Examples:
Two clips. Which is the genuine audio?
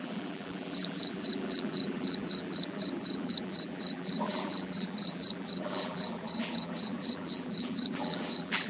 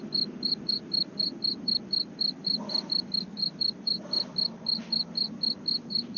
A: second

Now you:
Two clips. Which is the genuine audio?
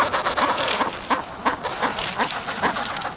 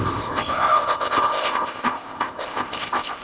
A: first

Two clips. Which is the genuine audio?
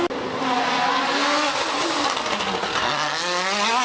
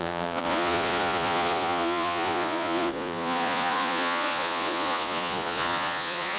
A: first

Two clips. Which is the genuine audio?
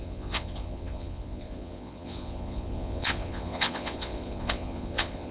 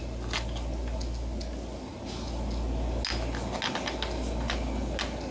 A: second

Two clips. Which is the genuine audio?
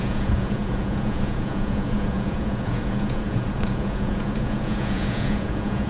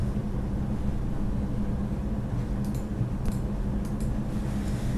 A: second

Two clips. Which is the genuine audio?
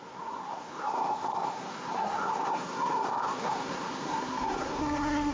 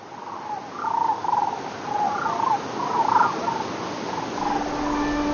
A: second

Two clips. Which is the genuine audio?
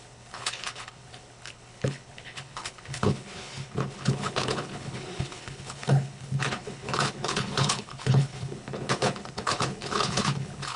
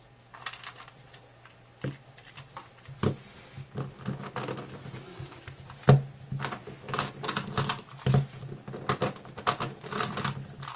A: second